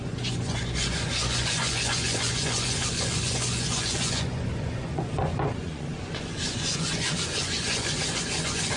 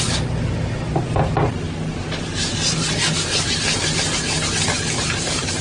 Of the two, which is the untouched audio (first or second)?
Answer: second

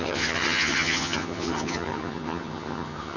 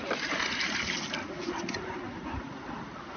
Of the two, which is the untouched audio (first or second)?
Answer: second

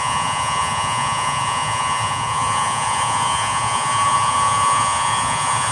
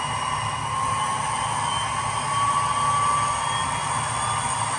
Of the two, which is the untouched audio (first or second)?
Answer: second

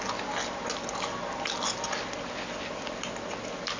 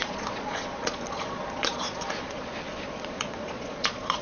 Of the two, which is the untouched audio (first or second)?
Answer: first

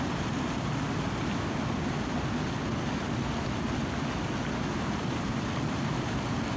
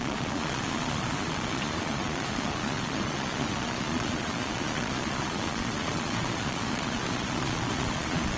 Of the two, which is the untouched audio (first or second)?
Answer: first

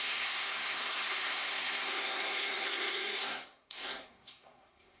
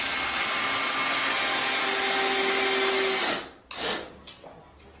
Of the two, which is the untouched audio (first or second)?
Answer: second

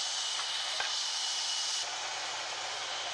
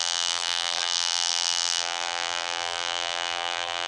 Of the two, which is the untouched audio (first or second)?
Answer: first